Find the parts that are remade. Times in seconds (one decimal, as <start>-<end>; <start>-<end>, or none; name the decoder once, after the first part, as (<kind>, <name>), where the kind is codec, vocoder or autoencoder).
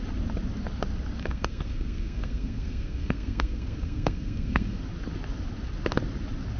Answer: 1.2-4.8 (codec, SNAC)